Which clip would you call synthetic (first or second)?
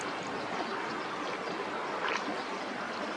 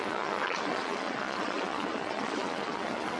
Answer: second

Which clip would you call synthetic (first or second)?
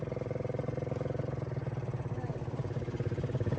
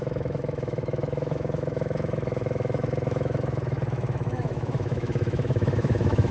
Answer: second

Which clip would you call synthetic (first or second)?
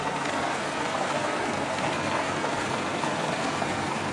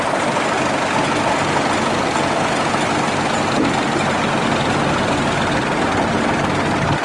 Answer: first